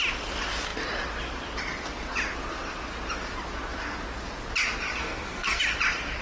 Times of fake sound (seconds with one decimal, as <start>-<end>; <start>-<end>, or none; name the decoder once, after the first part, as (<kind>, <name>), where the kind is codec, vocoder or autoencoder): 5.0-5.6 (codec, SNAC)